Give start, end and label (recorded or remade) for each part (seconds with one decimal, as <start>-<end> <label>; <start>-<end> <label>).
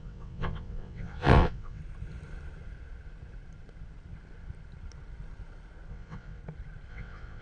0.0-1.8 remade; 1.8-5.9 recorded; 5.9-6.4 remade; 6.4-6.9 recorded; 6.9-7.4 remade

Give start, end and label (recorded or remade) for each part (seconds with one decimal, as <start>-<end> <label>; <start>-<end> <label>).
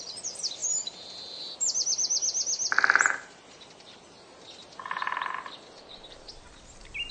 0.0-7.1 recorded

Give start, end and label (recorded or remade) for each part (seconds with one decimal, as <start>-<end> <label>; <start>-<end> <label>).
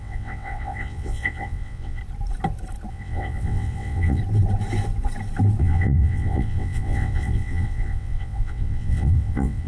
0.0-2.0 remade; 2.0-2.9 recorded; 2.9-4.2 remade; 4.2-5.6 recorded; 5.6-9.7 remade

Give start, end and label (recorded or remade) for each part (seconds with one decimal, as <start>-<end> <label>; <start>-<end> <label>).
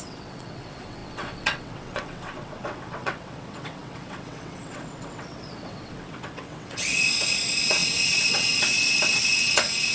0.0-9.9 remade